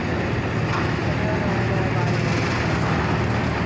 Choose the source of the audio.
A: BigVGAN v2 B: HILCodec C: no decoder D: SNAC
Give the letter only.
C